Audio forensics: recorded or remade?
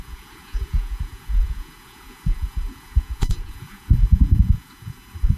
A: remade